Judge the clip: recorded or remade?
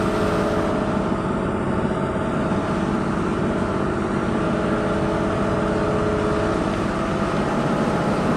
recorded